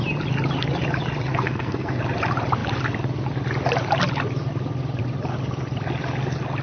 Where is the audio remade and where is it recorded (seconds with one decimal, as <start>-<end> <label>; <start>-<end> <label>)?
0.0-1.3 recorded; 1.3-2.0 remade; 2.0-6.6 recorded